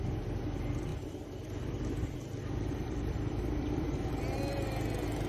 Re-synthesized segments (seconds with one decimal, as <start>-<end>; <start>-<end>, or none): 0.9-4.1